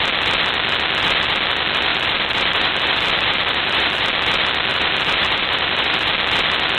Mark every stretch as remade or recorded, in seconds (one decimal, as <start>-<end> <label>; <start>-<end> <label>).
0.0-1.9 recorded; 1.9-4.0 remade; 4.0-4.7 recorded; 4.7-6.0 remade; 6.0-6.8 recorded

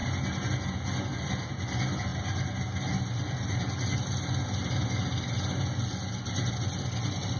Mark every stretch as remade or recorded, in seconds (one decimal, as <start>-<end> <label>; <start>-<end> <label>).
0.0-7.4 recorded

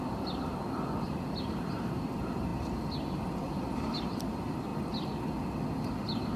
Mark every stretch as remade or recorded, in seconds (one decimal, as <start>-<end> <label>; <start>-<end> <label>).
0.0-4.7 remade; 4.7-5.7 recorded; 5.7-6.4 remade